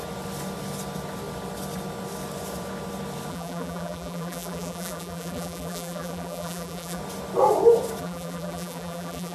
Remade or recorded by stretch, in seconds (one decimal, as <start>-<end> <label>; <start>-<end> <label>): 0.0-3.3 recorded; 3.3-7.0 remade; 7.0-8.0 recorded; 8.0-9.3 remade